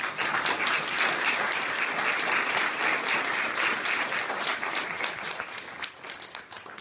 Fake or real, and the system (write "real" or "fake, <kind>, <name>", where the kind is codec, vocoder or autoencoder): real